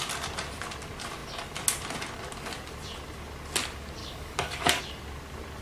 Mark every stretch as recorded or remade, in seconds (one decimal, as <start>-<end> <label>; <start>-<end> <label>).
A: 0.0-4.0 recorded; 4.0-4.8 remade; 4.8-5.6 recorded